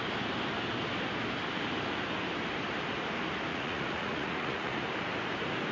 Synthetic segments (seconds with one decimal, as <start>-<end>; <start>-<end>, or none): 3.5-4.8